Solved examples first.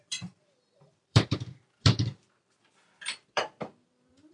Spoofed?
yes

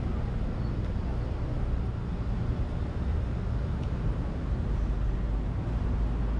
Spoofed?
no